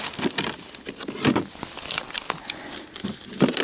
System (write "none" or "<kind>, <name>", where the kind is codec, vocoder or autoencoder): none